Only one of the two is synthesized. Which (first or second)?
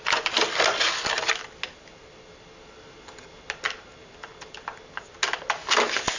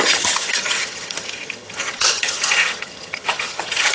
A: second